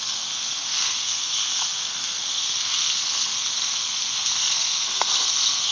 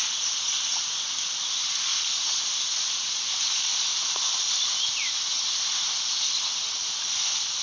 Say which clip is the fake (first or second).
first